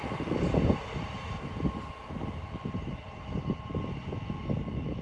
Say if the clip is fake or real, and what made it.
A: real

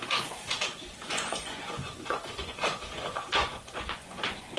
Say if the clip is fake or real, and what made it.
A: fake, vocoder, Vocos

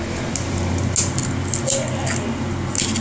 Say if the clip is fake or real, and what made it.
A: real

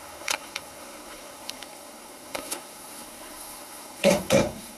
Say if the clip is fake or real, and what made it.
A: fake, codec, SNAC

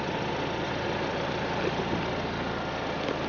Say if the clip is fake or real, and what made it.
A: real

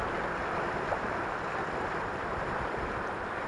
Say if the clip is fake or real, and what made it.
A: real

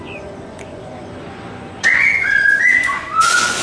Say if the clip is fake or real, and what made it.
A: fake, vocoder, Vocos